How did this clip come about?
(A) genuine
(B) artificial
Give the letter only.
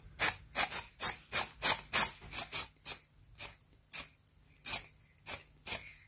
A